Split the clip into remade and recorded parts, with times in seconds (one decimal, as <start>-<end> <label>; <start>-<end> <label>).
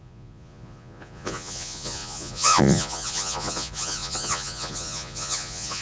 0.0-5.8 remade